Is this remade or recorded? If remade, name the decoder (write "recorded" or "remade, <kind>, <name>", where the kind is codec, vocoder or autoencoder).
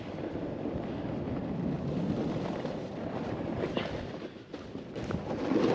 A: recorded